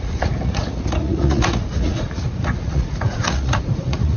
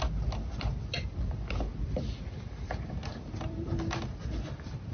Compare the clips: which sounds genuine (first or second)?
second